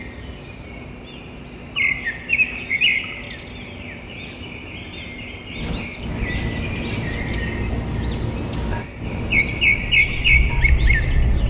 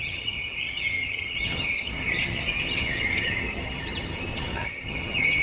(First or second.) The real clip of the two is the first